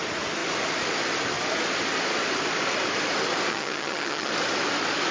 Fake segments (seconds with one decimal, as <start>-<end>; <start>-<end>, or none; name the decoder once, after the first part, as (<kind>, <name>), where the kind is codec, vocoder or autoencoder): 3.5-4.3 (vocoder, HiFi-GAN)